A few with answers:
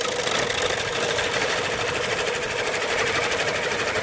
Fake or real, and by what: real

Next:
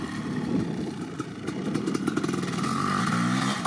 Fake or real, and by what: real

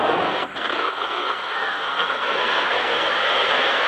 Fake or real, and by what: fake, codec, SNAC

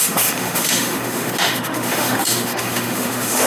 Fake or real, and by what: fake, autoencoder, DAC-VAE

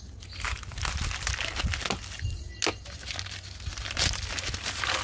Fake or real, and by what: real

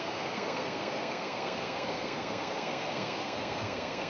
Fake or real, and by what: fake, codec, SNAC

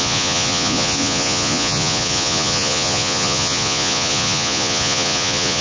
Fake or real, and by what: fake, vocoder, Vocos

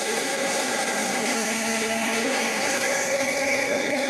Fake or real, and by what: fake, codec, SNAC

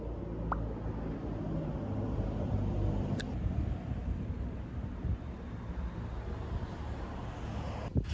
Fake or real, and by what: real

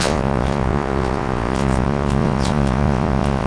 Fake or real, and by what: fake, vocoder, Vocos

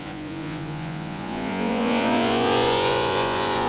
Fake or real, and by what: fake, vocoder, Vocos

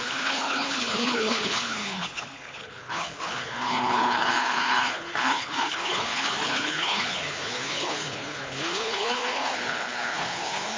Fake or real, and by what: fake, codec, HILCodec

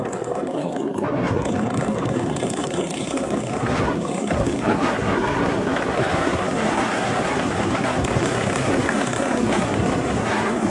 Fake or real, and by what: fake, codec, SNAC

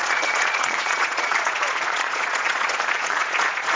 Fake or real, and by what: fake, vocoder, Vocos